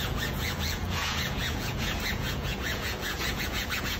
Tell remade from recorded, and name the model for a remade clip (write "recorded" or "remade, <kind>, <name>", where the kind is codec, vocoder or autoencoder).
remade, vocoder, Vocos